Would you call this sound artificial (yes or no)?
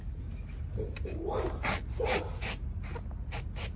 no